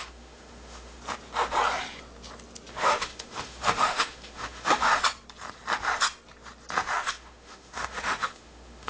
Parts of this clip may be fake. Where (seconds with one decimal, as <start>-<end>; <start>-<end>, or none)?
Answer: 0.0-1.0; 2.7-4.9; 7.1-8.9